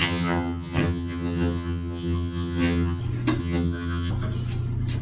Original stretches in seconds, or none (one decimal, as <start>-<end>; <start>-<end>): 3.0-3.4; 4.1-5.0